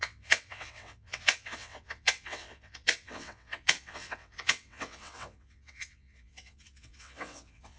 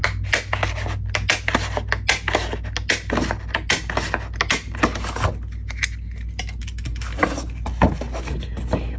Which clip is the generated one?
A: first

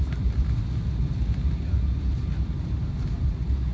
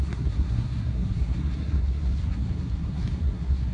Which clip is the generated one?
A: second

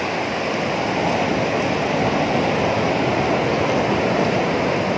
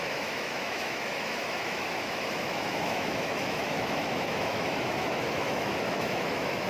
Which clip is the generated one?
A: second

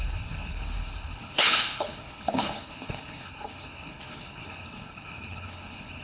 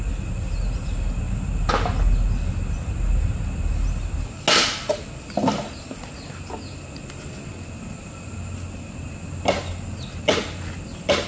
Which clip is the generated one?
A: first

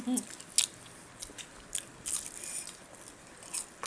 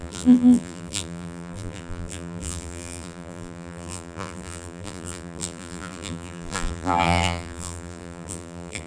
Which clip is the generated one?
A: second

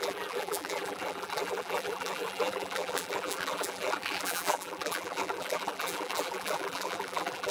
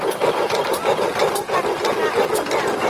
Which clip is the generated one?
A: first